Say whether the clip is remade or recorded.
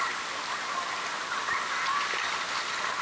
recorded